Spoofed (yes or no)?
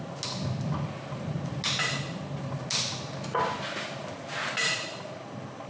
no